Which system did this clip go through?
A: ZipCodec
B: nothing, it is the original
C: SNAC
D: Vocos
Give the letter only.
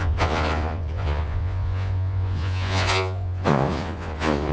D